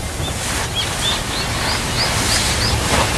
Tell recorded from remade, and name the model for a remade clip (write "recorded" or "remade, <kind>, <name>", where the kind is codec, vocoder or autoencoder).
recorded